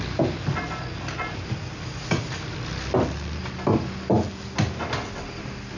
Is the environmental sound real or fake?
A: real